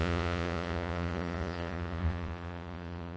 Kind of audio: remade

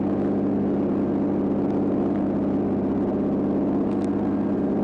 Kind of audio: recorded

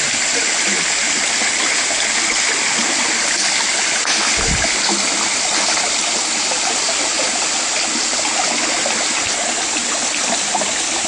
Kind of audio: recorded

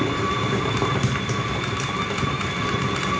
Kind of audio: recorded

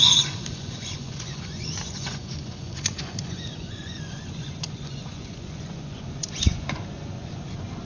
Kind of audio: remade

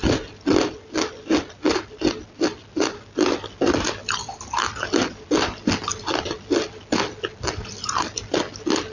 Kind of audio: recorded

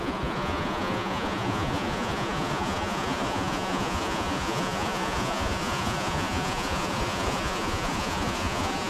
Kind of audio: remade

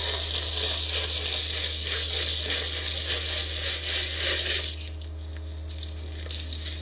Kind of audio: recorded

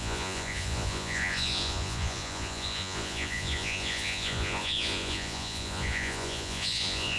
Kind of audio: remade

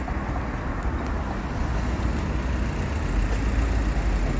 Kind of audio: recorded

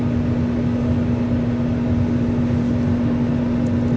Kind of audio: recorded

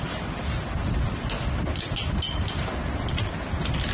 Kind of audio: recorded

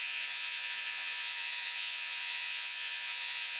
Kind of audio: remade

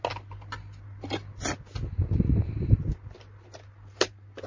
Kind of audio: recorded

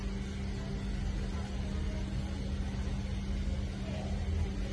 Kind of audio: recorded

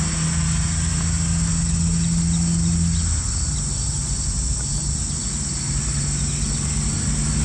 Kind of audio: recorded